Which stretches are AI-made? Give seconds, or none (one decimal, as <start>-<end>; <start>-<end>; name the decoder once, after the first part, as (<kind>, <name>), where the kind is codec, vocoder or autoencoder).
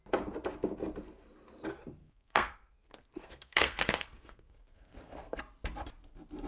2.0-5.4 (codec, SNAC)